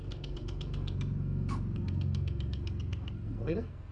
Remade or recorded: remade